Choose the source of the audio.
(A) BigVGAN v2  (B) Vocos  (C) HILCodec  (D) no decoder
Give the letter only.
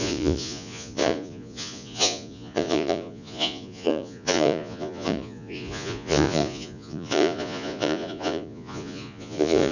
B